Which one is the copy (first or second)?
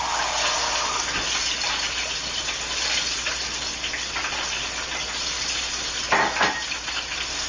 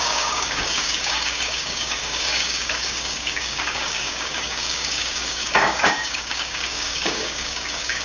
second